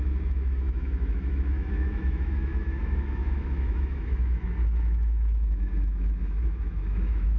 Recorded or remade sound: remade